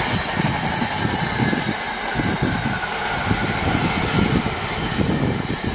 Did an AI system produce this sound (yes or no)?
no